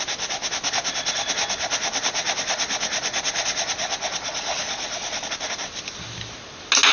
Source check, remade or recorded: recorded